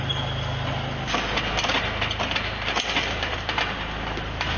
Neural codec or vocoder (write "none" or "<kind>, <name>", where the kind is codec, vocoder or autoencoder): none